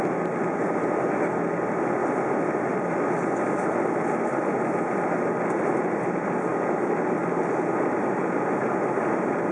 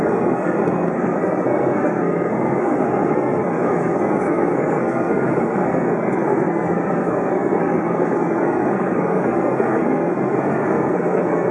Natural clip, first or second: first